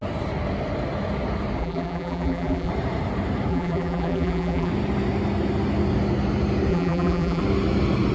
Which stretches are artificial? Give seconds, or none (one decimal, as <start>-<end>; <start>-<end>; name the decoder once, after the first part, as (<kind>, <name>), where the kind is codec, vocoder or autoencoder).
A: 1.6-2.7 (vocoder, BigVGAN v2); 3.5-4.7; 6.7-7.4